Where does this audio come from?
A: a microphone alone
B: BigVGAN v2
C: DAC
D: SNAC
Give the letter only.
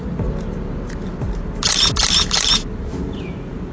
B